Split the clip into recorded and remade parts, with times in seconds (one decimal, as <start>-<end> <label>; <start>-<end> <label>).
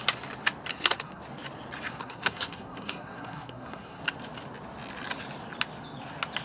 0.0-0.7 recorded; 0.7-1.2 remade; 1.2-1.9 recorded; 1.9-4.0 remade; 4.0-6.4 recorded